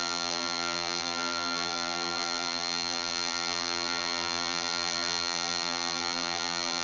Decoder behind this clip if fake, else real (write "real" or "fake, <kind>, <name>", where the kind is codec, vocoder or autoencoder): fake, vocoder, BigVGAN v2